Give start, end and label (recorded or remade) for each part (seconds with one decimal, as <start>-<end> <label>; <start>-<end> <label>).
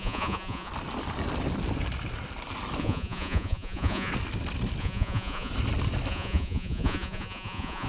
0.0-0.7 remade; 0.7-2.8 recorded; 2.8-4.1 remade; 4.1-4.8 recorded; 4.8-5.5 remade; 5.5-6.1 recorded; 6.1-7.9 remade